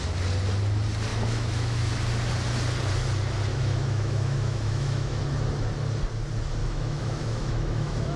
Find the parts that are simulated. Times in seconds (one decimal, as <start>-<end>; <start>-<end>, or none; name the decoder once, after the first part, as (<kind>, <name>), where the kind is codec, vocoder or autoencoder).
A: 1.1-1.9 (autoencoder, DAC-VAE); 3.5-5.2; 6.6-8.2